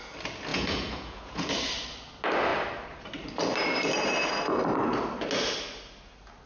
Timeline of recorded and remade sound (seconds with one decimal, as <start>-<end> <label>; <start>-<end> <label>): 0.0-0.5 recorded; 0.5-1.5 remade; 1.5-6.5 recorded